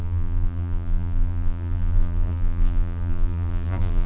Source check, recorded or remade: remade